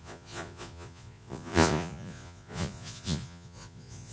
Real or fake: fake